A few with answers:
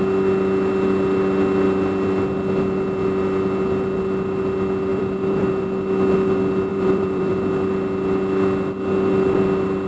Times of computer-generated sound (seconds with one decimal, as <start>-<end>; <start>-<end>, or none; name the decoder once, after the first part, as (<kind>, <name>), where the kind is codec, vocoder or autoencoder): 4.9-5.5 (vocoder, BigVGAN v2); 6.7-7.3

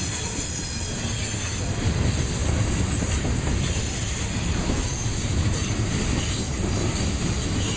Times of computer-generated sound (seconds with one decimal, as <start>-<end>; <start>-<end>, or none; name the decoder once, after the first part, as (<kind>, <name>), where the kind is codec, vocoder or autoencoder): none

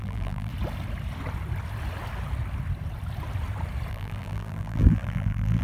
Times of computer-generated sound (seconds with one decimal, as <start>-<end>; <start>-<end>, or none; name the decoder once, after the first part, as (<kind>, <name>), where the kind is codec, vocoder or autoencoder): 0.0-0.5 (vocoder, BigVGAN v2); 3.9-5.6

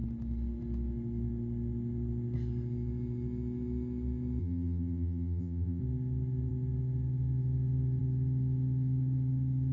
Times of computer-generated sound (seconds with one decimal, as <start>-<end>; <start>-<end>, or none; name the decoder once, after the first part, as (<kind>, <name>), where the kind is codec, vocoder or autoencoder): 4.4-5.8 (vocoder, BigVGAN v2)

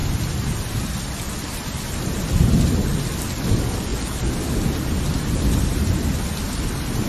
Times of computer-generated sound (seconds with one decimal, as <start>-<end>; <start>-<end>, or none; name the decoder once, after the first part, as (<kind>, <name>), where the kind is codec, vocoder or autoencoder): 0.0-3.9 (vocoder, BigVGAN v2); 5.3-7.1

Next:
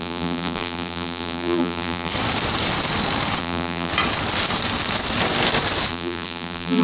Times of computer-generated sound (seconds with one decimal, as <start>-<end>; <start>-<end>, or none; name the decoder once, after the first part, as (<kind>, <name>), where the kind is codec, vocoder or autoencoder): 0.0-2.1 (vocoder, BigVGAN v2); 3.4-3.9; 5.9-6.8

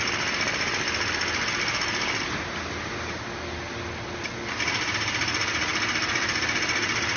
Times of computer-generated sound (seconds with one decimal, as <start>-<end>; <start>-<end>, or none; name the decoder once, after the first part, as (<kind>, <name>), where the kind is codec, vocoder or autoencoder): none